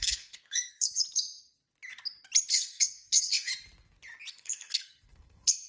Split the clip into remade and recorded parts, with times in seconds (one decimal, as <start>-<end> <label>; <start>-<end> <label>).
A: 0.0-1.0 remade; 1.0-2.5 recorded; 2.5-3.5 remade; 3.5-4.3 recorded; 4.3-5.7 remade